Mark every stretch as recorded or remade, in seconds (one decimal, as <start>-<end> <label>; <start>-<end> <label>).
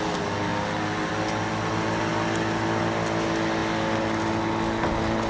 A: 0.0-5.3 recorded